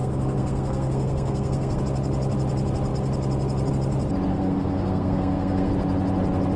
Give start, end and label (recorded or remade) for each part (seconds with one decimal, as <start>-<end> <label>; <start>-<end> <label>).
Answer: 0.0-1.8 remade; 1.8-4.3 recorded; 4.3-5.7 remade; 5.7-6.6 recorded